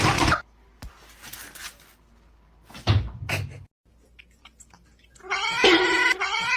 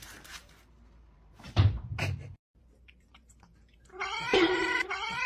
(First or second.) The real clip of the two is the first